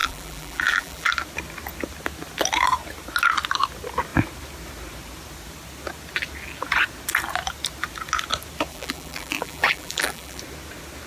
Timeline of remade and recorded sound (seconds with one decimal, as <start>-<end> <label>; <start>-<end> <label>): 0.0-1.1 remade; 1.1-8.7 recorded; 8.7-10.4 remade; 10.4-11.1 recorded